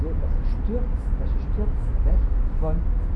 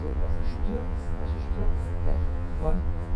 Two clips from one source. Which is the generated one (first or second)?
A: second